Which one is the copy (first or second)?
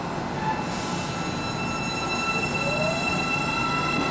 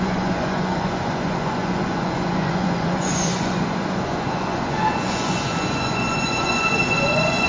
second